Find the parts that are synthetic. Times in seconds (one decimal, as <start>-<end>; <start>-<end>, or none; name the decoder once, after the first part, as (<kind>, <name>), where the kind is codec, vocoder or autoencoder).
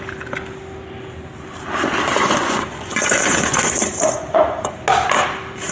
2.2-4.7 (vocoder, Vocos)